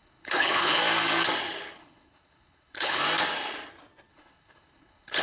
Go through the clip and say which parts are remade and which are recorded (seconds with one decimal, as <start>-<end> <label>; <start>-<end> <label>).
0.0-0.8 remade; 0.8-1.8 recorded; 1.8-3.0 remade; 3.0-4.1 recorded; 4.1-5.2 remade